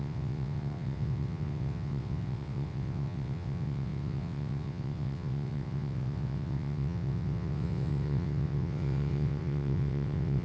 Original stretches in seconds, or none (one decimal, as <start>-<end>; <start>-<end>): none